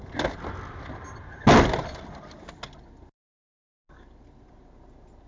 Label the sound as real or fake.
real